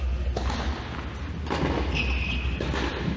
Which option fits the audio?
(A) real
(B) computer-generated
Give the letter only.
A